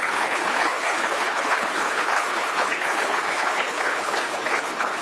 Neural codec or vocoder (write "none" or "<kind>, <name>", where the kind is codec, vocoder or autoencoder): codec, HILCodec